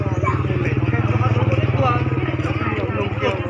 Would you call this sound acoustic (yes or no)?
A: yes